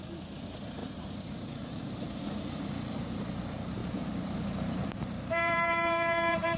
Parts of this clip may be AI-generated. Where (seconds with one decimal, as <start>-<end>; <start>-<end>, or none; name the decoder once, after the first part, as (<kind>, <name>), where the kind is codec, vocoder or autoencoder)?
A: 0.8-2.7 (vocoder, BigVGAN v2); 3.8-6.6